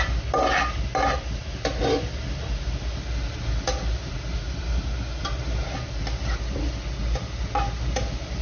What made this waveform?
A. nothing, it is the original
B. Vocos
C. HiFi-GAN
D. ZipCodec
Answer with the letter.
A